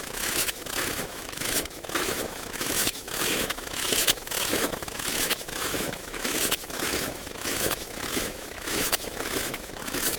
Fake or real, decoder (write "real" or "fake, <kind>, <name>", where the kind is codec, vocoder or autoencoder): fake, autoencoder, DAC-VAE